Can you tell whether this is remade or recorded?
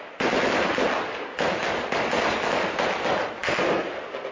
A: recorded